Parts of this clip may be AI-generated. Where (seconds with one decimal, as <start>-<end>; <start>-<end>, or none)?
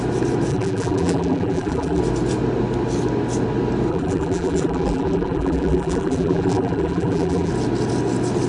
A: 0.5-2.0; 3.9-7.5